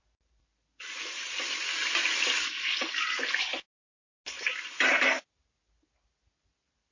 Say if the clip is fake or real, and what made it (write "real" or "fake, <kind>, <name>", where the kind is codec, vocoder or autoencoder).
real